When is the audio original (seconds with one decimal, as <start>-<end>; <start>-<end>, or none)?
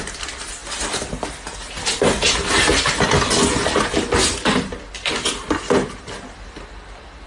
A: 0.0-7.3